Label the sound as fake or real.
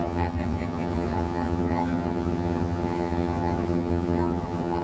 fake